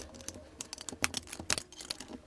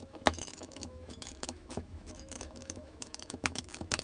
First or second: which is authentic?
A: first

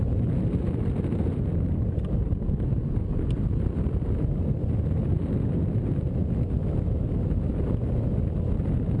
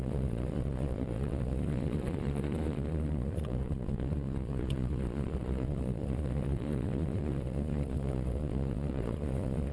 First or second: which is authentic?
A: first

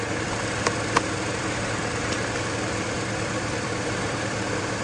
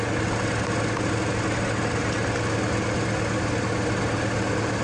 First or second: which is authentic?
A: second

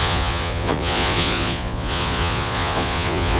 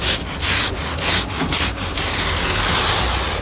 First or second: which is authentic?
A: second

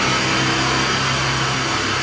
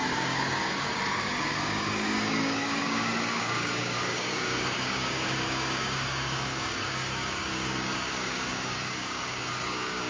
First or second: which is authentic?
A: first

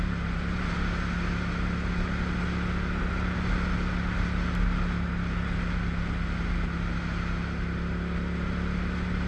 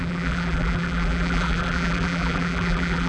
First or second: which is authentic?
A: first